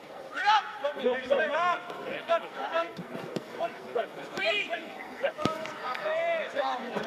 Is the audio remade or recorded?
remade